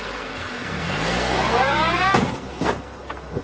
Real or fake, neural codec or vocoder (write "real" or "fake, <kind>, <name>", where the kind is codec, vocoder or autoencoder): fake, codec, SNAC